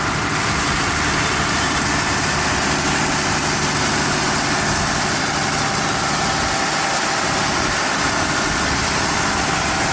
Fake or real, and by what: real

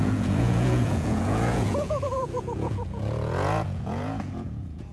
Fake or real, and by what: fake, vocoder, Vocos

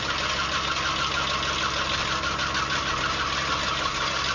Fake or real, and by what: real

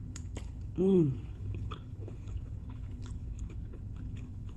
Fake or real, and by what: fake, codec, HILCodec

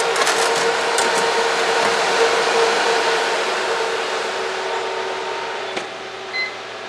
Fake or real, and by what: real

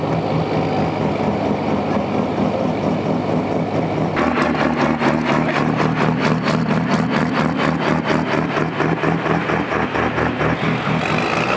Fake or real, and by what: real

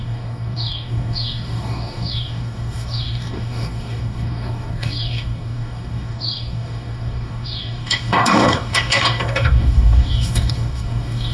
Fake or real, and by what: fake, codec, DAC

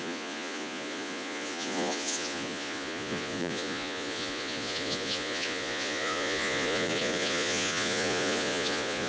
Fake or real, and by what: fake, vocoder, Vocos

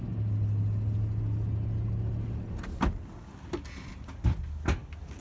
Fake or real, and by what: real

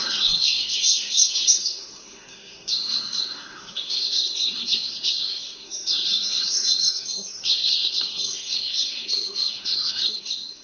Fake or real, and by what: fake, codec, SNAC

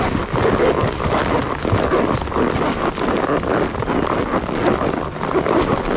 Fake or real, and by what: real